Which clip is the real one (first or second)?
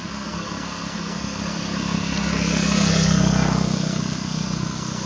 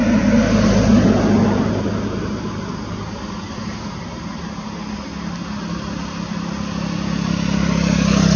second